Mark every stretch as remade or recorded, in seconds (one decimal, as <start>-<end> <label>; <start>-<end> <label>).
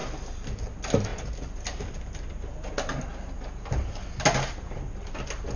0.0-5.6 recorded